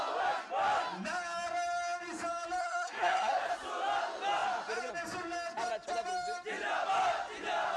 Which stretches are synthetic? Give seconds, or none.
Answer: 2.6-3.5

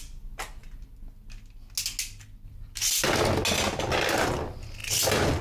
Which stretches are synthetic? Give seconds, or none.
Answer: none

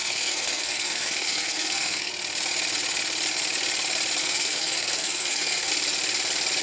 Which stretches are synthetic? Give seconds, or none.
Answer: 0.0-2.1; 4.2-5.7

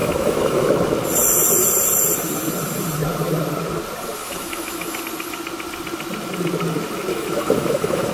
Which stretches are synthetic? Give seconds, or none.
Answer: 0.0-0.7; 4.2-5.0; 7.1-8.1